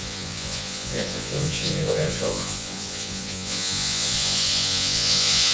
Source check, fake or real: fake